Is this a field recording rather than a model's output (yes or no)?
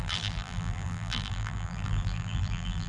no